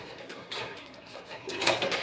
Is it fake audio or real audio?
fake